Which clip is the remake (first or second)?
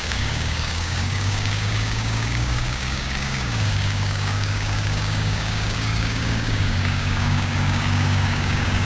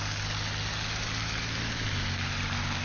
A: first